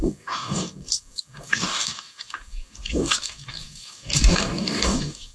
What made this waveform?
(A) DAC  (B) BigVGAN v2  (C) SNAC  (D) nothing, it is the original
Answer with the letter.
A